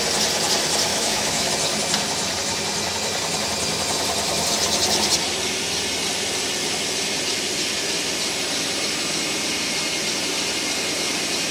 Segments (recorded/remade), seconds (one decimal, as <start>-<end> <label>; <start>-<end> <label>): 0.0-0.9 recorded; 0.9-1.5 remade; 1.5-11.5 recorded